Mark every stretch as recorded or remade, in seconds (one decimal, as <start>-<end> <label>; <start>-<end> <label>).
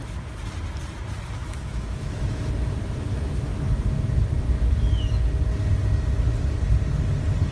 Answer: 0.0-1.4 recorded; 1.4-2.5 remade; 2.5-3.1 recorded; 3.1-3.7 remade; 3.7-7.5 recorded